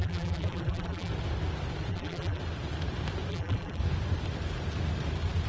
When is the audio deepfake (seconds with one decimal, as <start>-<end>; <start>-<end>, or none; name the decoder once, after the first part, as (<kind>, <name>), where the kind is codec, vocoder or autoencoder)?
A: 0.0-1.1 (vocoder, BigVGAN v2); 1.9-2.4; 3.3-3.8